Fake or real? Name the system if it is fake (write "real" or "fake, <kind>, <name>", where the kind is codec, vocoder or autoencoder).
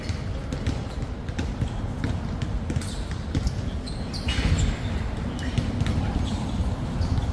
real